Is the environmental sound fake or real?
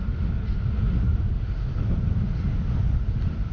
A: real